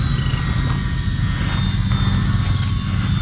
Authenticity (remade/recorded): recorded